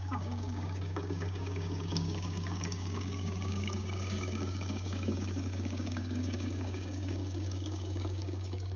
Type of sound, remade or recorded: remade